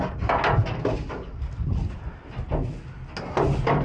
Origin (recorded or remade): recorded